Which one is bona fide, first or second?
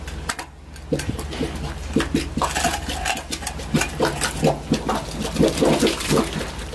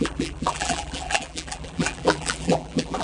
first